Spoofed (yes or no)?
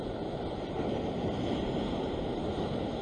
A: no